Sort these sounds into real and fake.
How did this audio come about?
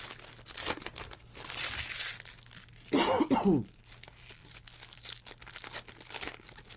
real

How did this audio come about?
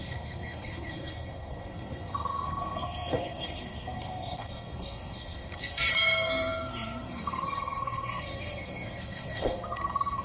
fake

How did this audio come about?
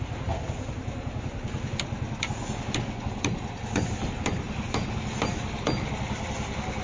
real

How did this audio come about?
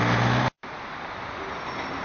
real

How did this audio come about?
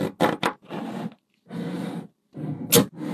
real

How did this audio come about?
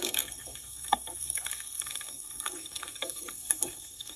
fake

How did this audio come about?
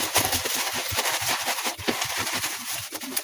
fake